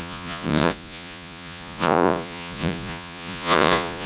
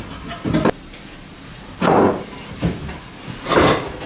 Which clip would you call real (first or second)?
second